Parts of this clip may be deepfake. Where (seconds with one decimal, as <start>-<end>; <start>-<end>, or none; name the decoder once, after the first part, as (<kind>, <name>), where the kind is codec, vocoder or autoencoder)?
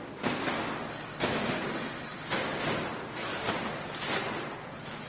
none